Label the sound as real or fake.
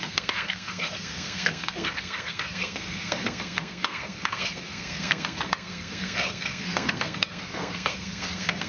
fake